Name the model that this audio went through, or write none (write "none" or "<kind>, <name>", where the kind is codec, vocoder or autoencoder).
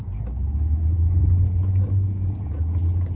none